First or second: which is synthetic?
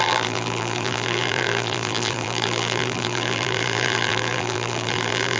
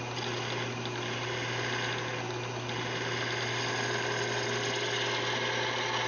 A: first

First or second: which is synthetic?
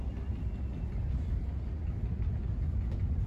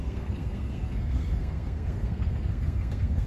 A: second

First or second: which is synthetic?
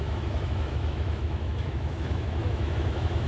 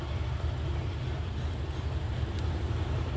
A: first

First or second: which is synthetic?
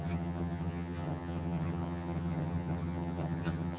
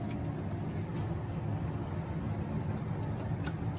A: first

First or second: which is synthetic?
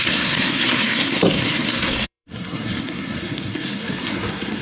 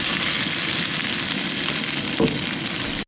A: first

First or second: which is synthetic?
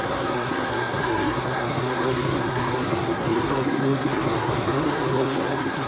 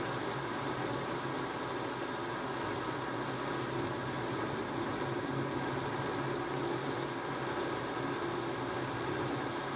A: first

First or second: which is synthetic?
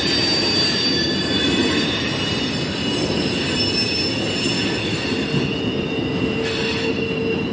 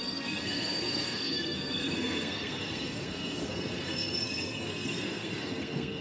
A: second